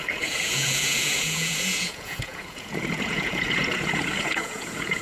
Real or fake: fake